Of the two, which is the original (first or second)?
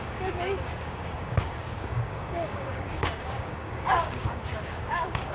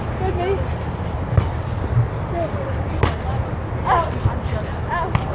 second